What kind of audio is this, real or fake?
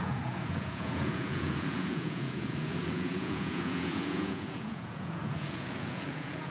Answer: fake